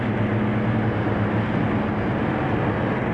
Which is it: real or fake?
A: real